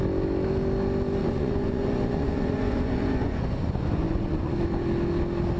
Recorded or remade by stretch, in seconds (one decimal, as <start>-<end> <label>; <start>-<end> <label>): 0.0-1.2 recorded; 1.2-4.6 remade; 4.6-5.6 recorded